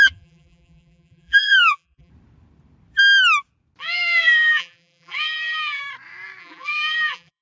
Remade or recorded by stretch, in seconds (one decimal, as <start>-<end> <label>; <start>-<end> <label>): 0.0-2.1 remade; 2.1-3.8 recorded; 3.8-5.8 remade; 5.8-6.4 recorded; 6.4-7.4 remade